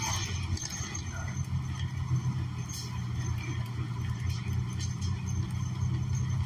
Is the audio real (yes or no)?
yes